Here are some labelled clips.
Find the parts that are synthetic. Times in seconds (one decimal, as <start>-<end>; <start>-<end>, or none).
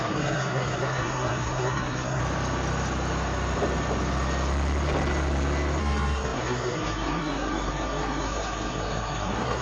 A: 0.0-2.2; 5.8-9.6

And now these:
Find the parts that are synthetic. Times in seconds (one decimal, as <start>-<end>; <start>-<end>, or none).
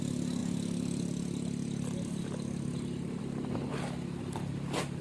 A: none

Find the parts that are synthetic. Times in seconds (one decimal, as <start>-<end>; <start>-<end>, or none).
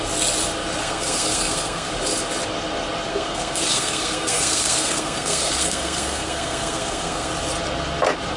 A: 0.8-1.9; 3.1-7.3